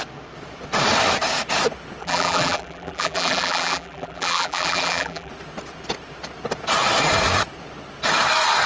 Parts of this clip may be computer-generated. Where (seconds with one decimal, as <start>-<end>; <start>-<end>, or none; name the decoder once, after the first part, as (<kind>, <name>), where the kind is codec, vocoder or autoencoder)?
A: 2.0-5.3 (vocoder, BigVGAN v2)